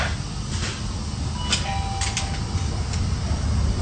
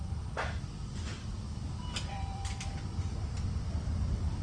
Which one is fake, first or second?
second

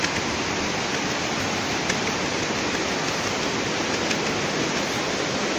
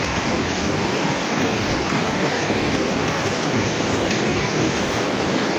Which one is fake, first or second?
second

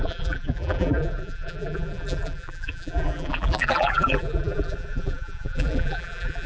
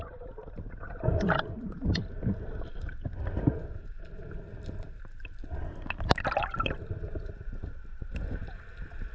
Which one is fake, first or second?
first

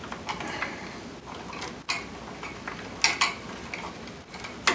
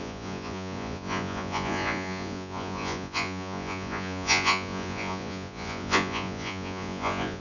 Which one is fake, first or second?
second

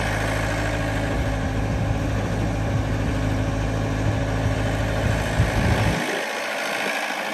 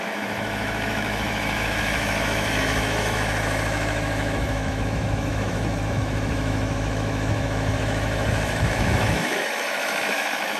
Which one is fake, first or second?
second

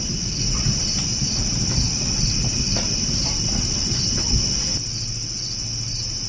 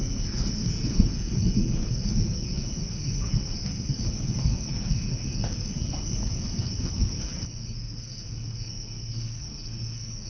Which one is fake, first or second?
second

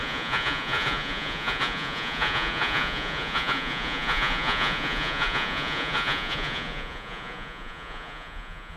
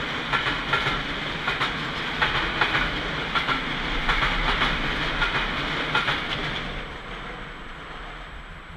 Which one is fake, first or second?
first